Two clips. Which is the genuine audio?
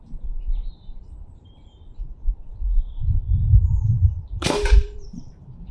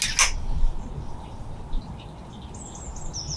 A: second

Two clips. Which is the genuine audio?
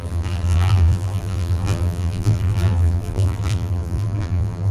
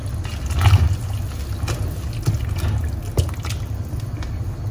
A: second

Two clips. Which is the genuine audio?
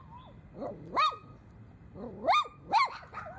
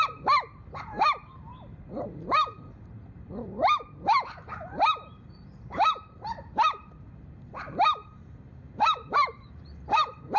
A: first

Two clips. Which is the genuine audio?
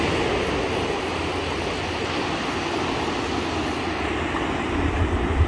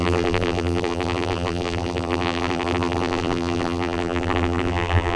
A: first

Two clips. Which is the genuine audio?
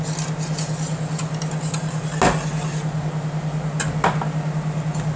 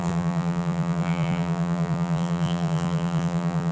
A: first